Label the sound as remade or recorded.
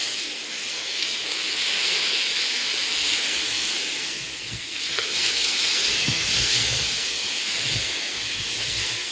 remade